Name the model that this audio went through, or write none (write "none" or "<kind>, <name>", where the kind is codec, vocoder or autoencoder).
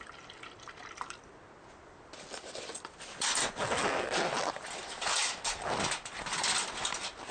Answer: vocoder, BigVGAN v2